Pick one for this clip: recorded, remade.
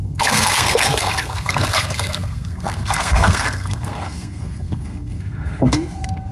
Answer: remade